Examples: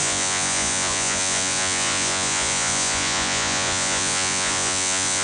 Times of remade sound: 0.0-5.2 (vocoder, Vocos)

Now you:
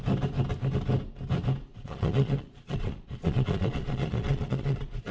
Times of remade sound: 1.7-5.1 (vocoder, Vocos)

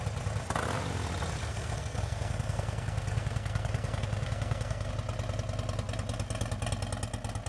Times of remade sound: 1.4-4.9 (codec, SNAC)

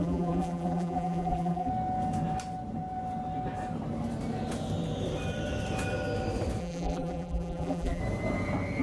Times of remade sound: 0.0-1.7 (vocoder, BigVGAN v2); 6.6-8.0